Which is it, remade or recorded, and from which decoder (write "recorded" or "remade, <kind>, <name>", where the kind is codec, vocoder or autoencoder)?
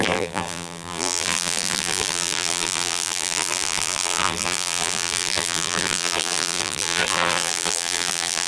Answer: remade, vocoder, BigVGAN v2